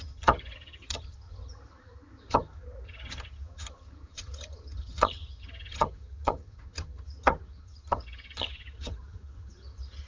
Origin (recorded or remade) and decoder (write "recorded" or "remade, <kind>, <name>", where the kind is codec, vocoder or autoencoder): remade, vocoder, HiFi-GAN